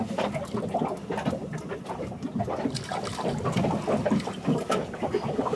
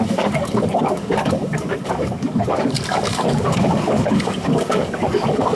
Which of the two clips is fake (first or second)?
second